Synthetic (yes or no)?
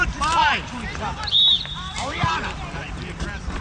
yes